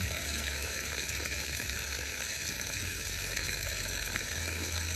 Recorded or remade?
remade